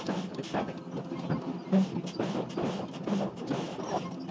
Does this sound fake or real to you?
real